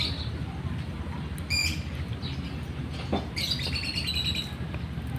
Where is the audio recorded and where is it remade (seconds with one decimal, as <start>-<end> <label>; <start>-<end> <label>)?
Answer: 0.0-1.6 recorded; 1.6-4.1 remade; 4.1-5.2 recorded